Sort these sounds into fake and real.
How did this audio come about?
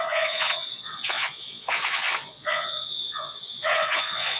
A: fake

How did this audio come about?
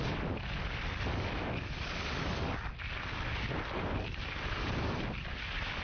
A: real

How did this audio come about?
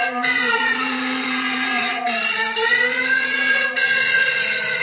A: fake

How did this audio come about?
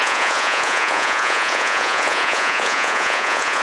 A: fake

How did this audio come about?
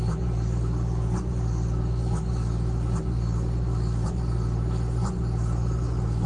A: real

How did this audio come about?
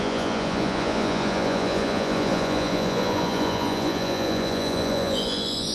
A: fake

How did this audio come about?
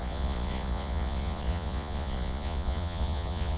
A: fake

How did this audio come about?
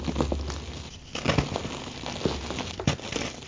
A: real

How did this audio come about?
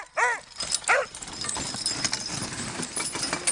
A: real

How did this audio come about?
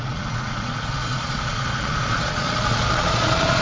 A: fake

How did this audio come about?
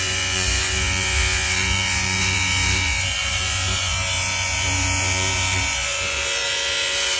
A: fake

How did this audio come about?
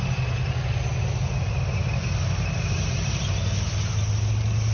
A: real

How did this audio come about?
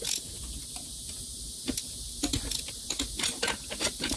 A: real